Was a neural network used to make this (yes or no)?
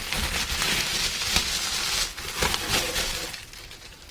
no